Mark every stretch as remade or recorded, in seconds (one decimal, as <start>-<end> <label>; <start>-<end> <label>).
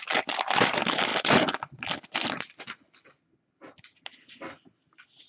0.0-5.3 recorded